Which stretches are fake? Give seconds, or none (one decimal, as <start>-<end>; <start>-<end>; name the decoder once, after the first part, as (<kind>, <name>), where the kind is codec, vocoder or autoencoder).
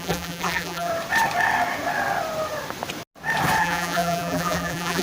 0.0-0.9 (vocoder, BigVGAN v2); 3.6-5.0